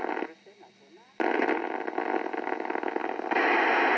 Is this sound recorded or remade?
recorded